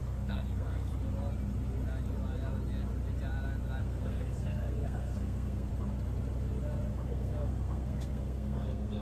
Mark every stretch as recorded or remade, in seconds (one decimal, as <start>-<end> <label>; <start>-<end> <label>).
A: 0.0-0.9 remade; 0.9-3.8 recorded; 3.8-5.7 remade; 5.7-6.9 recorded; 6.9-9.0 remade